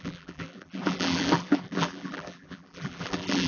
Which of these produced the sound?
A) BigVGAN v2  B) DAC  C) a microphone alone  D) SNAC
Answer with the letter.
A